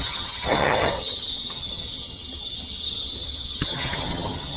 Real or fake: fake